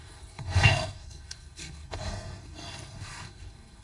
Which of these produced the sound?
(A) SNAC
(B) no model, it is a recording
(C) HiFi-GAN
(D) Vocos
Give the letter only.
A